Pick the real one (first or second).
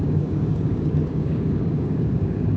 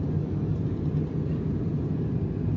second